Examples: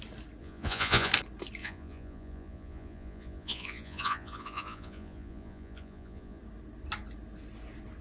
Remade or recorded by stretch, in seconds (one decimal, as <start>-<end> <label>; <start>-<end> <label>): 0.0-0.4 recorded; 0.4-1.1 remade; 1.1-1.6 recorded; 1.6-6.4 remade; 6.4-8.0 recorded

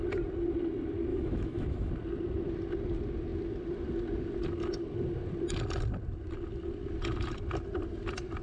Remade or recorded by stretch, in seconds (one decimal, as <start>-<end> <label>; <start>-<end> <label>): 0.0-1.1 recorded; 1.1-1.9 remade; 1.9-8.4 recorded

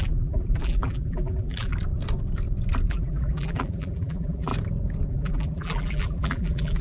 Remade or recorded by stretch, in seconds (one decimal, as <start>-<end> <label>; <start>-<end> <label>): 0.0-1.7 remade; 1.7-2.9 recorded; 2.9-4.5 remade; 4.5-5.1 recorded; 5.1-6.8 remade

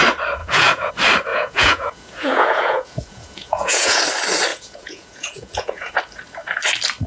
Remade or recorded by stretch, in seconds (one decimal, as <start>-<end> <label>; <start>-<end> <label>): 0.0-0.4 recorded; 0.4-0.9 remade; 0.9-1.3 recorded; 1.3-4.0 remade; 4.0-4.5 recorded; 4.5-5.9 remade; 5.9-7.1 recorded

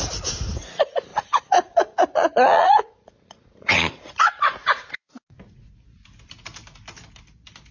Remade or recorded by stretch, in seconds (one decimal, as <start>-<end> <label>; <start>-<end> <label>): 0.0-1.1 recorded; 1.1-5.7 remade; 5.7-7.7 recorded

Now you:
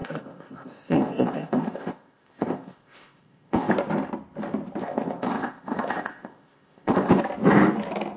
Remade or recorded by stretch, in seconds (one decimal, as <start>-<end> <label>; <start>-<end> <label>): 0.0-3.7 remade; 3.7-4.8 recorded; 4.8-7.2 remade; 7.2-8.2 recorded